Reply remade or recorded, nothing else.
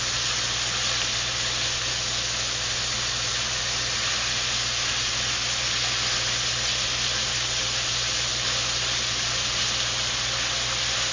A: recorded